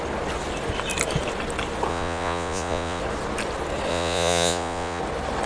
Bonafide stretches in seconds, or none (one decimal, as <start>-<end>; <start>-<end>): 0.0-1.9; 3.0-3.9; 5.0-5.5